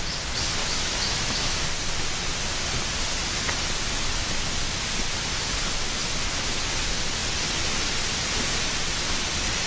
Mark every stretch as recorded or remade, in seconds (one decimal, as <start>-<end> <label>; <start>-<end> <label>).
0.0-0.6 recorded; 0.6-1.6 remade; 1.6-9.7 recorded